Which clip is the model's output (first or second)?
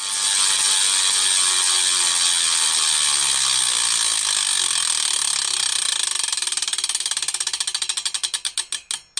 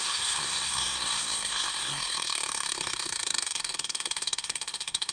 second